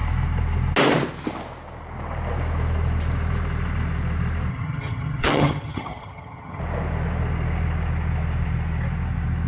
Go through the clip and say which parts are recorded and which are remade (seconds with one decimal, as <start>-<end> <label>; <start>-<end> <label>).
0.0-4.5 recorded; 4.5-6.6 remade; 6.6-9.5 recorded